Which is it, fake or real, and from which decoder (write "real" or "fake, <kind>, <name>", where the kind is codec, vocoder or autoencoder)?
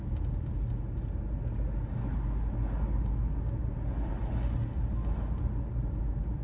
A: real